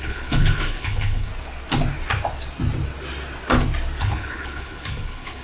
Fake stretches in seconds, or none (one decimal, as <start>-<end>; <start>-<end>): 0.0-1.3; 4.0-5.4